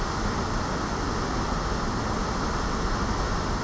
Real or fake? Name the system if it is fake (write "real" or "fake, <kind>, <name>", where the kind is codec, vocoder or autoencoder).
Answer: real